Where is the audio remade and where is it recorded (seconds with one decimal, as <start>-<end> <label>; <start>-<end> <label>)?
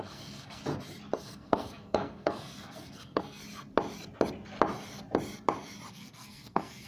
0.0-0.6 remade; 0.6-1.2 recorded; 1.2-3.4 remade; 3.4-5.9 recorded; 5.9-6.9 remade